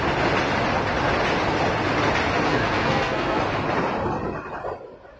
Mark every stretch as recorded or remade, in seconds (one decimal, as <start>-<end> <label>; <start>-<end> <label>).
0.0-2.5 recorded; 2.5-3.4 remade; 3.4-5.2 recorded